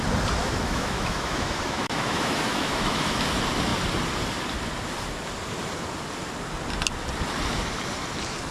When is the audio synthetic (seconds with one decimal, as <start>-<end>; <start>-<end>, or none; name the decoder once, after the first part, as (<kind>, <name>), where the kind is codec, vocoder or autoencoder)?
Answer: 0.4-3.2 (autoencoder, DAC-VAE)